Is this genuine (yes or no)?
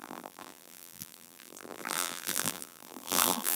no